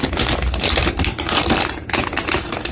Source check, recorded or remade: recorded